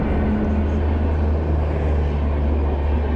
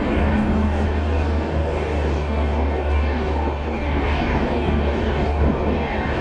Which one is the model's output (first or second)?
second